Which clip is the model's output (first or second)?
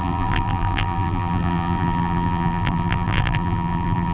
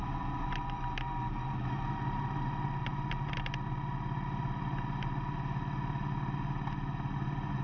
first